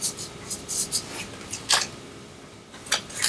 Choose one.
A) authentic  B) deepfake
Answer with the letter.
A